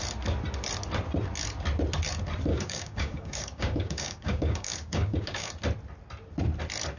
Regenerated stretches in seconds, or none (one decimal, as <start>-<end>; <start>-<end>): 2.5-5.5